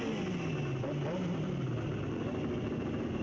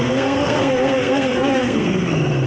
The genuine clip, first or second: first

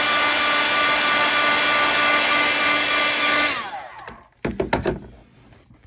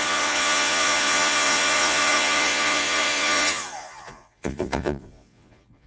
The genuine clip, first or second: first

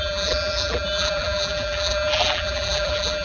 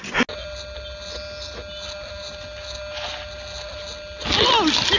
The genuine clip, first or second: second